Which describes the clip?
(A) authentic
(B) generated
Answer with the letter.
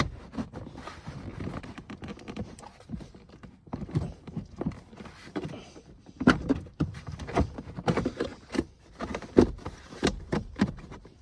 B